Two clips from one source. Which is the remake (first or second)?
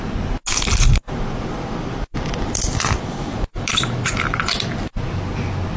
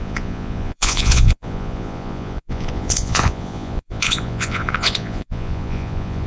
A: second